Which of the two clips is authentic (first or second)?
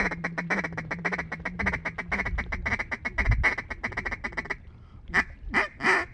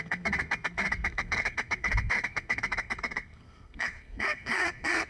first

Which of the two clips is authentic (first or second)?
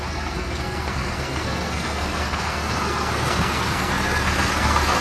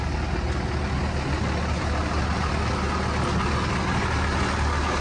second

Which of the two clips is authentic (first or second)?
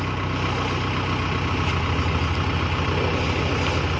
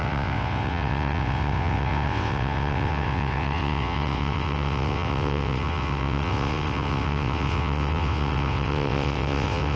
first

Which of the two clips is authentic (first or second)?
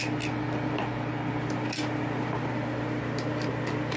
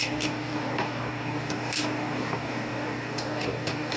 first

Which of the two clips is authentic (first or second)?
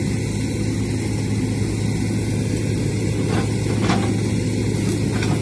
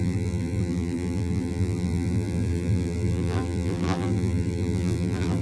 first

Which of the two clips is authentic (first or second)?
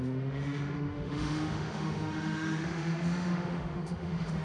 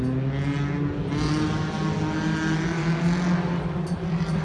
second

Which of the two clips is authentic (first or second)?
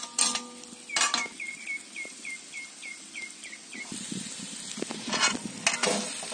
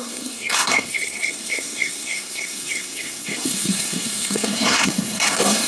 first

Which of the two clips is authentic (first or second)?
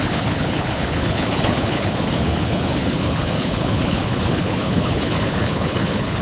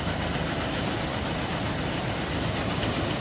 second